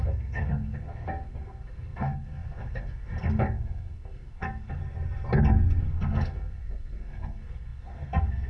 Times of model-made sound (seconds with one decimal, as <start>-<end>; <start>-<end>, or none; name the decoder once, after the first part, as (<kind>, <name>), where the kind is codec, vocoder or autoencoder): 0.0-4.8 (codec, SNAC); 5.8-8.5